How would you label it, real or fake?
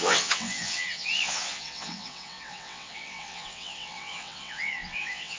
fake